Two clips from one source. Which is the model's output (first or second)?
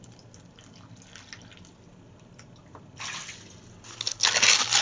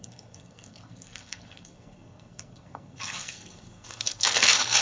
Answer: second